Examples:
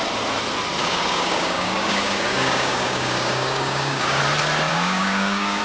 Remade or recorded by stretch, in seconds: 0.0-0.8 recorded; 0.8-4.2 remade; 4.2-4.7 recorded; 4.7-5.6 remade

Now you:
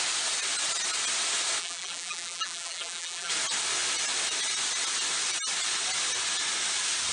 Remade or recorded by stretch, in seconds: 0.0-1.6 recorded; 1.6-3.3 remade; 3.3-7.1 recorded